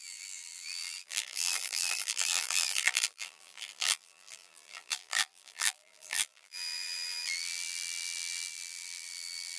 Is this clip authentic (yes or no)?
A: no